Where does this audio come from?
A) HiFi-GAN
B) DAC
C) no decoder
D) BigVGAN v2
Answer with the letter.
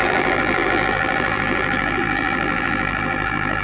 D